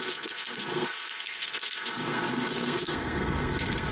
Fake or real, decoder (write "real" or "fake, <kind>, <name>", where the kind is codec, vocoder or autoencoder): fake, codec, SNAC